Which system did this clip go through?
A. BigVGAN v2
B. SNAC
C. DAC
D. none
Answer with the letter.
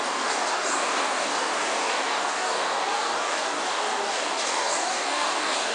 C